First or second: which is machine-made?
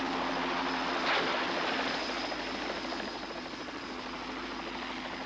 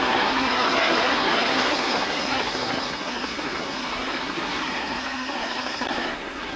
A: second